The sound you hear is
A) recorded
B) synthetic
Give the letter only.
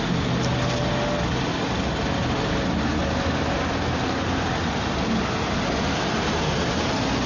A